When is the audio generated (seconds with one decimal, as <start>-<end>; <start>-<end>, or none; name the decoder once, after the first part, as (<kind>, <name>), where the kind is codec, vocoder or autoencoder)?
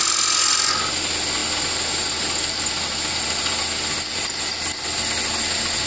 none